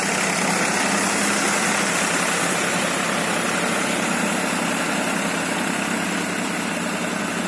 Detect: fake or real real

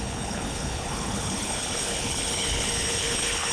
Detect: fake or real fake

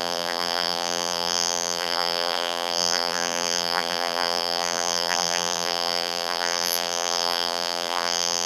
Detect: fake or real fake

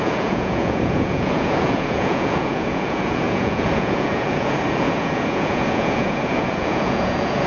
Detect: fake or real fake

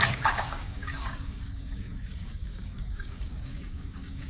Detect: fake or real fake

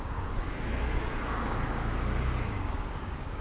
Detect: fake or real fake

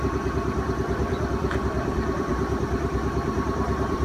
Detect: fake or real fake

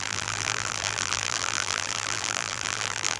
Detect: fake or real fake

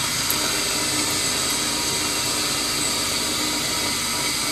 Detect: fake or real real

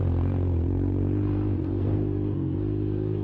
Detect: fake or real fake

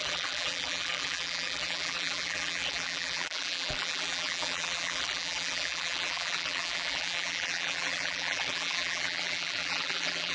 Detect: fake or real fake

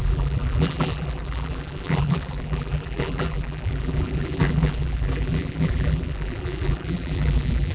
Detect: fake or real fake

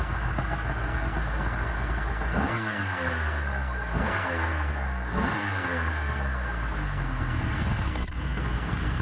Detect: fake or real fake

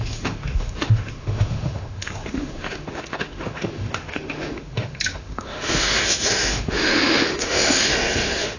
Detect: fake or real fake